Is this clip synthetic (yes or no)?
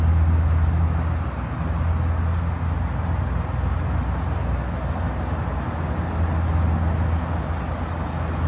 no